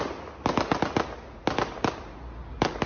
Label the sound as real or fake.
real